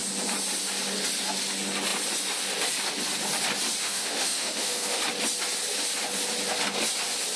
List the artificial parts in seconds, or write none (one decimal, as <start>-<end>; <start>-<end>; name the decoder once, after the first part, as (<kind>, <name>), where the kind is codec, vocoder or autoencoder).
3.8-5.0 (autoencoder, DAC-VAE)